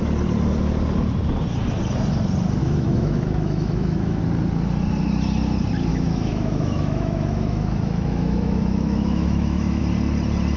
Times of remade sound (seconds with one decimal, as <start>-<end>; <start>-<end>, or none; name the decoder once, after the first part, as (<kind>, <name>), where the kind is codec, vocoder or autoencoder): 2.6-4.2 (autoencoder, DAC-VAE); 5.9-9.8